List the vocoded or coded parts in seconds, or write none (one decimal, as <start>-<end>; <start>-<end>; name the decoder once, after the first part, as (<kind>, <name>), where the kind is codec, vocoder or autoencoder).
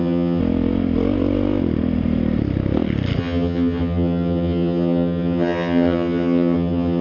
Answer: 0.0-0.4 (vocoder, HiFi-GAN); 3.2-7.0